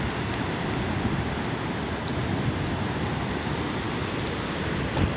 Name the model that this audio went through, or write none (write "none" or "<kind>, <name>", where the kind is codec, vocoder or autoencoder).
none